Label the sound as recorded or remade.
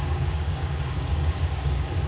remade